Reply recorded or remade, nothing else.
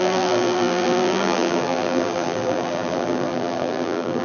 remade